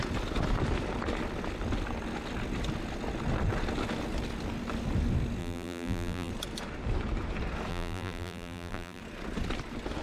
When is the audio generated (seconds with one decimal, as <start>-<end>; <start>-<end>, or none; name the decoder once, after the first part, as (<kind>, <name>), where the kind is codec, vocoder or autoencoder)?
5.4-6.3 (vocoder, BigVGAN v2); 7.7-9.0